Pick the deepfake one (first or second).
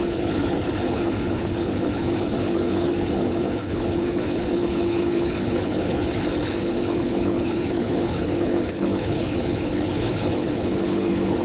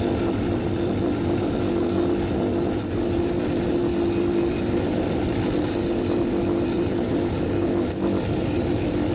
first